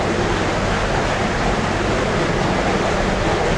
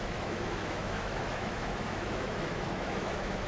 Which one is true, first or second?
first